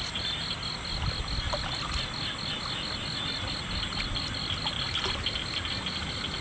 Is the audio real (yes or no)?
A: yes